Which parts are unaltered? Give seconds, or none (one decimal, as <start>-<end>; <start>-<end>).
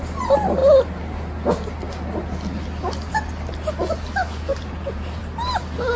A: 0.0-4.5; 5.2-6.0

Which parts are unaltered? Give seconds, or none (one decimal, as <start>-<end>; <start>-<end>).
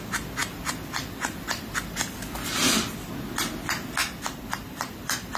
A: 0.0-0.4; 2.6-4.0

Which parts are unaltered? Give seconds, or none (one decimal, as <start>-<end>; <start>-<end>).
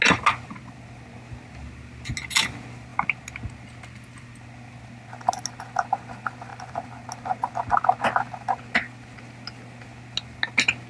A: 0.0-10.9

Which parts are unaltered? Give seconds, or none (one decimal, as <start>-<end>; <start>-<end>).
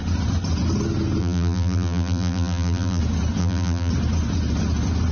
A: 0.0-1.2; 3.0-3.4; 3.9-5.1